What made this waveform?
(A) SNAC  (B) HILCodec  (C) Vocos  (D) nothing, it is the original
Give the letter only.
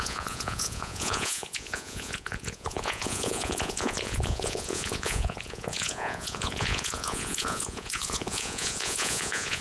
C